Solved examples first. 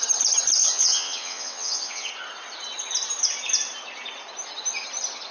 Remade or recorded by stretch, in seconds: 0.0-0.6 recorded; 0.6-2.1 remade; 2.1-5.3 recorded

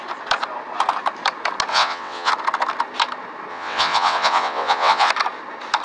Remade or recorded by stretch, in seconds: 0.0-1.7 recorded; 1.7-2.3 remade; 2.3-3.5 recorded; 3.5-5.1 remade; 5.1-5.8 recorded

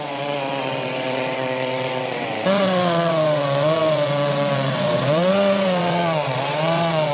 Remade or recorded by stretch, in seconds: 0.0-7.1 remade

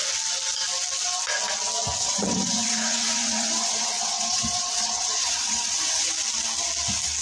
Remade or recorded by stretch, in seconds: 0.0-2.0 recorded; 2.0-6.1 remade; 6.1-7.2 recorded

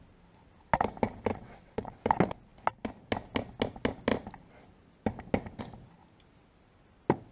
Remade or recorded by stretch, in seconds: 0.0-1.3 recorded; 1.3-2.0 remade; 2.0-7.3 recorded

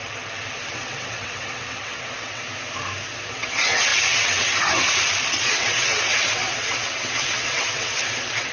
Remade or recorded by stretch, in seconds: 0.0-0.7 recorded; 0.7-2.4 remade; 2.4-3.3 recorded; 3.3-8.5 remade

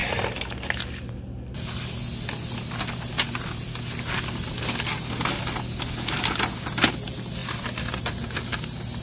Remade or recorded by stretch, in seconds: 0.0-9.0 recorded